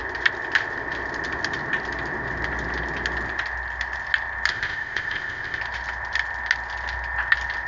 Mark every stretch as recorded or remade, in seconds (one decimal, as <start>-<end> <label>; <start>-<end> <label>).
0.0-4.5 recorded; 4.5-5.6 remade; 5.6-7.7 recorded